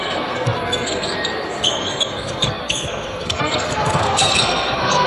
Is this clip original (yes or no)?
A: no